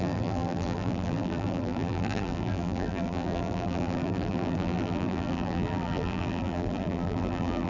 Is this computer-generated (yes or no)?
yes